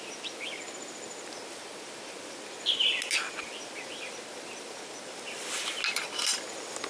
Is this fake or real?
real